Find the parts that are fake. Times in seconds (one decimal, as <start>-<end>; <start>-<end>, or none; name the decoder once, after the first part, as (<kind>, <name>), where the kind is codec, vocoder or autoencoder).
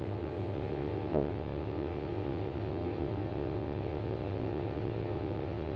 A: 0.0-5.8 (vocoder, WaveNeXt)